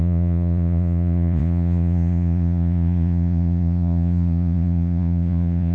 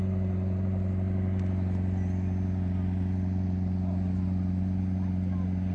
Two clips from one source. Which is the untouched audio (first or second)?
second